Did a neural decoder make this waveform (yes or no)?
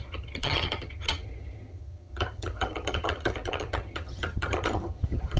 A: yes